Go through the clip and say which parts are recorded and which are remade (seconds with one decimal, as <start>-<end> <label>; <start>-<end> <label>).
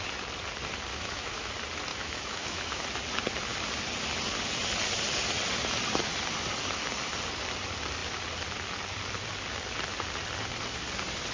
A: 0.0-0.9 recorded; 0.9-1.5 remade; 1.5-1.9 recorded; 1.9-2.8 remade; 2.8-11.3 recorded